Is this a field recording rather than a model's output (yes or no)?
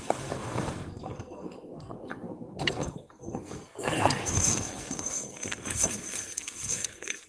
no